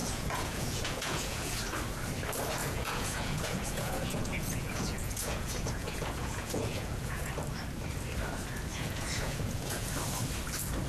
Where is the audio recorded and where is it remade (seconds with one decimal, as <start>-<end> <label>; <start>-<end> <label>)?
0.0-1.6 remade; 1.6-2.6 recorded; 2.6-7.3 remade; 7.3-8.7 recorded; 8.7-9.9 remade; 9.9-10.9 recorded